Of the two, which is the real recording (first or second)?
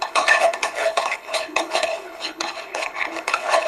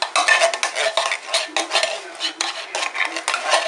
second